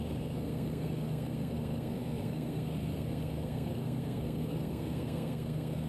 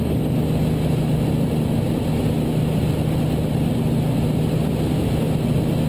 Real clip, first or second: second